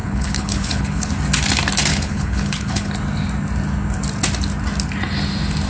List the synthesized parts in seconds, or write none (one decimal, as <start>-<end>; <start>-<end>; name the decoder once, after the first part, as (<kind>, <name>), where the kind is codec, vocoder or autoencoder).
0.0-1.1 (codec, HILCodec); 1.9-2.9